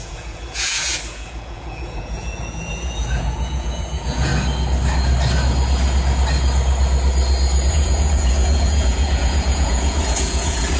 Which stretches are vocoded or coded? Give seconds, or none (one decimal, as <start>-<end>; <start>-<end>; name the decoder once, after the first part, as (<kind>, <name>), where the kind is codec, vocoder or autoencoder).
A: 0.0-4.3 (vocoder, Vocos); 7.7-10.8